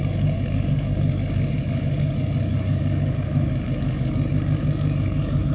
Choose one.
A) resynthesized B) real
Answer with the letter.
A